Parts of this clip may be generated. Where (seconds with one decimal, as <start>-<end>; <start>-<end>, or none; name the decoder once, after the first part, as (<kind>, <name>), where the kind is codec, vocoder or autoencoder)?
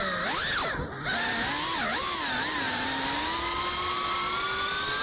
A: 1.9-5.0 (vocoder, BigVGAN v2)